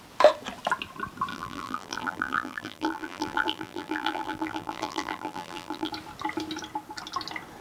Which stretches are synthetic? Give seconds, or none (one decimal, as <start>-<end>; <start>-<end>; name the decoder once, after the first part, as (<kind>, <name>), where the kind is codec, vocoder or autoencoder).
1.3-5.9 (vocoder, BigVGAN v2)